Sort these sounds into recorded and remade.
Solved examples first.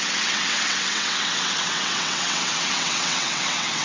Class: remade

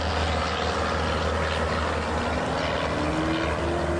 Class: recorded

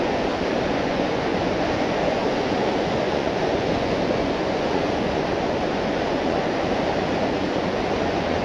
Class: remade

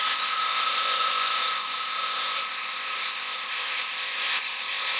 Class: remade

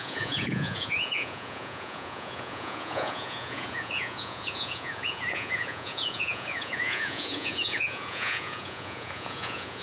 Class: remade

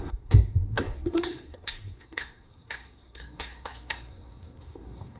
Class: remade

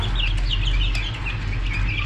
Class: recorded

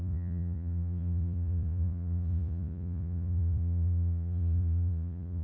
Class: remade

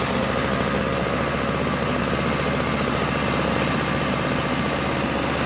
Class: recorded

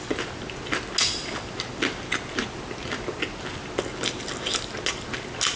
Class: recorded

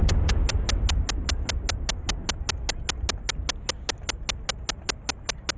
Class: recorded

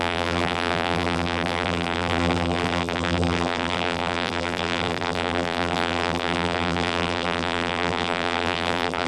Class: remade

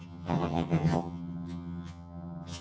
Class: remade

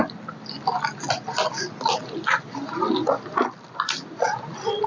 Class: recorded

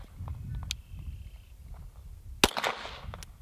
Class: recorded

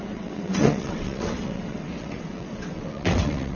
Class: remade